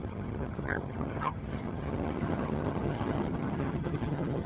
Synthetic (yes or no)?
yes